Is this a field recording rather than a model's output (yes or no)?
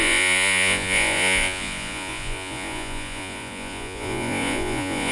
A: no